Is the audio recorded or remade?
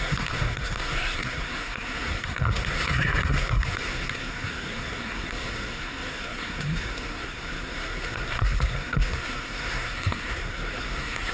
remade